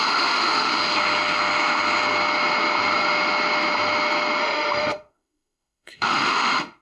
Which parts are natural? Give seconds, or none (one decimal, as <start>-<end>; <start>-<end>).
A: 0.7-4.4